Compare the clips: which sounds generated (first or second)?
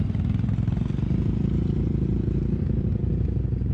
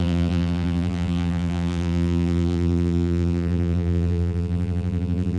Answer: second